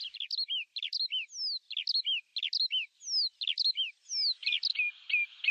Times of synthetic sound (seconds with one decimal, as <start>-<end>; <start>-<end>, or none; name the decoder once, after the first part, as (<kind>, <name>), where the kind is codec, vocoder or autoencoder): none